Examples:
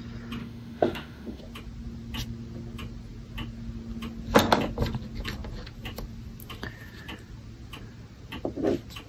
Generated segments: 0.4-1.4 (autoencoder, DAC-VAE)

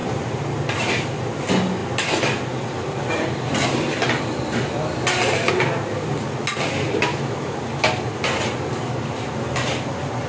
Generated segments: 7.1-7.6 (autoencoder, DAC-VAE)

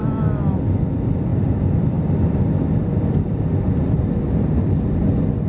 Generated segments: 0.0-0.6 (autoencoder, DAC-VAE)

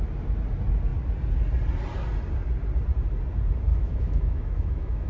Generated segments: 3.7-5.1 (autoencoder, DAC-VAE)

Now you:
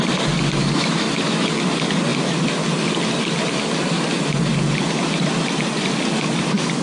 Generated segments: 0.6-1.5 (autoencoder, DAC-VAE)

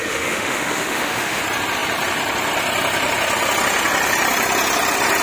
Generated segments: 0.0-1.4 (autoencoder, DAC-VAE)